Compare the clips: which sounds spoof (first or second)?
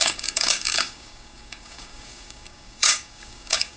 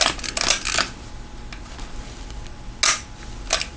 first